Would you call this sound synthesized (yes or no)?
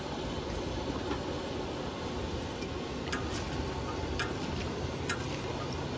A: no